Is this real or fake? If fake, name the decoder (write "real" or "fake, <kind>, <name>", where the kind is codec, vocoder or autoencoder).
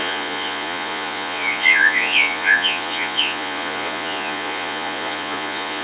fake, vocoder, Vocos